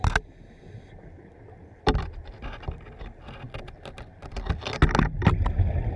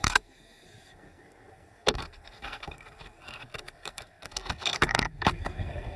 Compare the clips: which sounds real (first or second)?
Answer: first